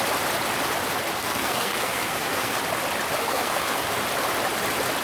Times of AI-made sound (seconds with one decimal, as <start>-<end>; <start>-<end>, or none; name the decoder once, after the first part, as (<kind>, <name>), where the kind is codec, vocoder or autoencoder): 1.2-2.6 (codec, SNAC); 3.2-3.8